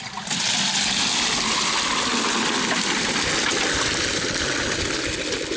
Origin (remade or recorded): recorded